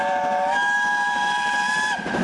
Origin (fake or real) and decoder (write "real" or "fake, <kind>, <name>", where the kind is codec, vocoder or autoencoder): real